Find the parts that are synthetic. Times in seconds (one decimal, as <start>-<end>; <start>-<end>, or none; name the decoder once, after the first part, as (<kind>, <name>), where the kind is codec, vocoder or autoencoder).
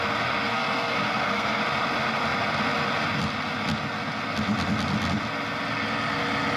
0.5-1.6 (codec, SNAC)